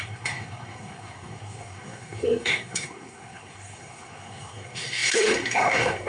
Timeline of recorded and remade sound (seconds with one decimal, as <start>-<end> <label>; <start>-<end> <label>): 0.0-6.1 remade